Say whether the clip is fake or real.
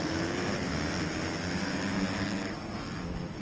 real